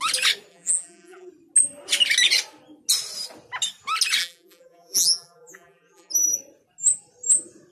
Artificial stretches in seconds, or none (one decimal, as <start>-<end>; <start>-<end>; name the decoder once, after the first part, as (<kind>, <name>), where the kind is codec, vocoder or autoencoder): 0.5-1.3 (vocoder, BigVGAN v2); 4.2-6.1